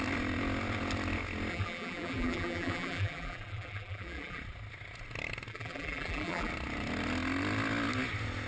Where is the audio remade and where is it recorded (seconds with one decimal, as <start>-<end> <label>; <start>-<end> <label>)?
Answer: 0.0-1.5 recorded; 1.5-4.4 remade; 4.4-5.5 recorded; 5.5-6.5 remade; 6.5-8.5 recorded